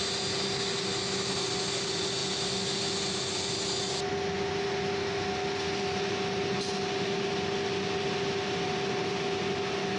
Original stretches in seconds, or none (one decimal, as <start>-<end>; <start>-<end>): 0.0-10.0